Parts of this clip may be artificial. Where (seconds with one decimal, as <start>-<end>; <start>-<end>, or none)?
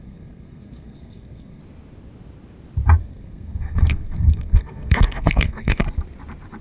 0.0-1.6; 3.0-5.8